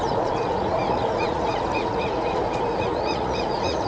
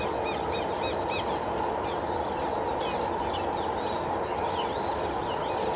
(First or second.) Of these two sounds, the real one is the second